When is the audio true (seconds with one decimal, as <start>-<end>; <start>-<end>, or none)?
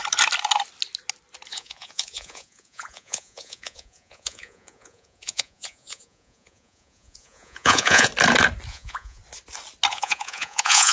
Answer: 0.0-1.5; 8.1-8.7; 9.2-9.9